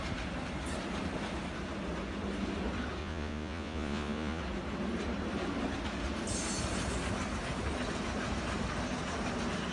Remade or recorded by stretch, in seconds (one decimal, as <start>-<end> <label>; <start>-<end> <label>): 0.0-3.0 recorded; 3.0-4.4 remade; 4.4-9.7 recorded